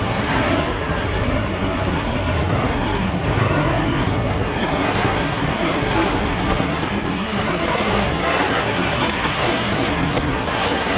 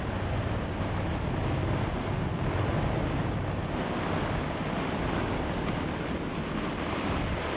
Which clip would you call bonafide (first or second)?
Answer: second